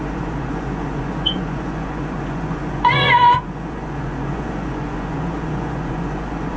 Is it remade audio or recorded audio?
remade